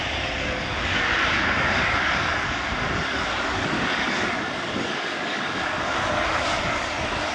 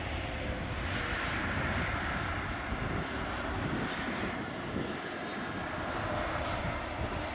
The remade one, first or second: first